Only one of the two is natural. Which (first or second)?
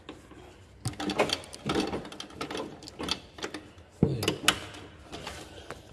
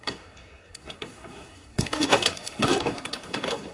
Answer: first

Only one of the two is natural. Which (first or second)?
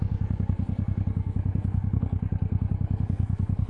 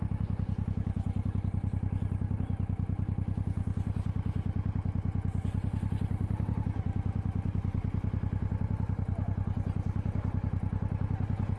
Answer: second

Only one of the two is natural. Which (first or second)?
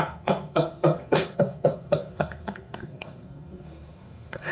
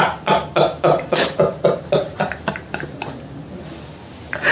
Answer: second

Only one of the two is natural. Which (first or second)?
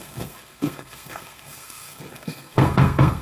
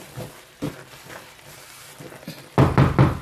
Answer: second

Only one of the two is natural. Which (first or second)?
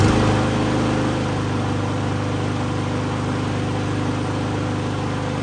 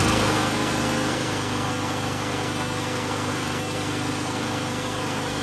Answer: first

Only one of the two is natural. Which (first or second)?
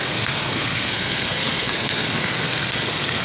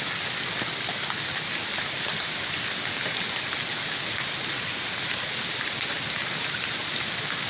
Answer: second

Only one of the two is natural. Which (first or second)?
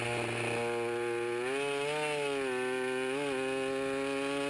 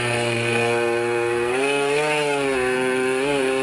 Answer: first